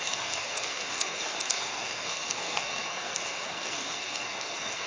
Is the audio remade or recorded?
remade